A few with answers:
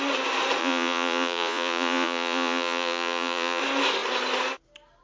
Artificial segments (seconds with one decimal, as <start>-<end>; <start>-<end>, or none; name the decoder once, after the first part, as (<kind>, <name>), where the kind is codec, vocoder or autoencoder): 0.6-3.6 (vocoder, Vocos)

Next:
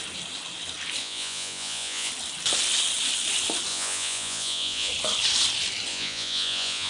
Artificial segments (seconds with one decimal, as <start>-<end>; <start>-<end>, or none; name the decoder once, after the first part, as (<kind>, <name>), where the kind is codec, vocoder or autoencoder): 1.0-2.1 (vocoder, Vocos); 3.7-4.9; 5.9-6.9

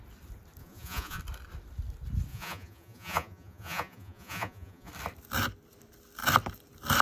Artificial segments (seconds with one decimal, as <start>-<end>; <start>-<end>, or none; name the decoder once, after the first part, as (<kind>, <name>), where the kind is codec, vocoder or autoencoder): 0.6-1.2 (vocoder, Vocos); 2.3-4.9

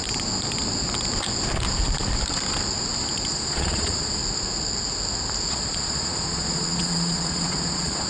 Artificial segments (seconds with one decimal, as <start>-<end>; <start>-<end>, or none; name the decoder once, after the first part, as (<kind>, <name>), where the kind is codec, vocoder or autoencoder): 3.3-4.2 (vocoder, Vocos); 5.5-8.1

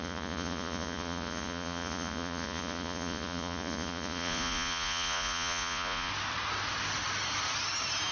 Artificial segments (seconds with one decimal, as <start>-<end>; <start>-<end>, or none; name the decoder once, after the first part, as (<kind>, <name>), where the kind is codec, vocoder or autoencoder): 0.0-6.1 (vocoder, Vocos)

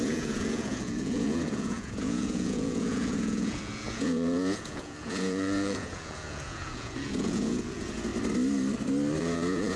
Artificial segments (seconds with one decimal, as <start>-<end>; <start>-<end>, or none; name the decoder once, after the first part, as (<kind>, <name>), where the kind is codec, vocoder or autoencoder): 0.0-8.1 (vocoder, Vocos); 9.2-9.8

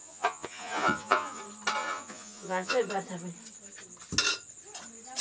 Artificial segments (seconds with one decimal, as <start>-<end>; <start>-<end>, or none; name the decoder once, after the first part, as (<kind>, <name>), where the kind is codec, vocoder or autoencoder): 0.0-1.4 (vocoder, Vocos); 1.8-2.8